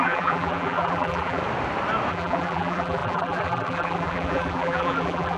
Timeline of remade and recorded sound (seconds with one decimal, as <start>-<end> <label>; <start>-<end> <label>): 0.0-1.4 remade; 1.4-2.1 recorded; 2.1-5.4 remade